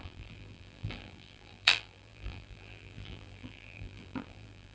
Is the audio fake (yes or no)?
yes